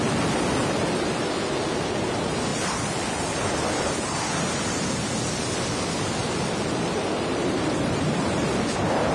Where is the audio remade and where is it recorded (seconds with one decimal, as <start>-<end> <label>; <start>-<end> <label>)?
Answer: 0.0-0.6 recorded; 0.6-1.5 remade; 1.5-2.5 recorded; 2.5-4.9 remade; 4.9-6.2 recorded; 6.2-8.5 remade; 8.5-9.1 recorded